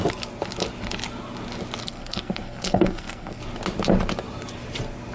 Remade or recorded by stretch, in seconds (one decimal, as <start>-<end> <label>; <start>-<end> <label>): 0.0-1.8 recorded; 1.8-3.4 remade; 3.4-5.1 recorded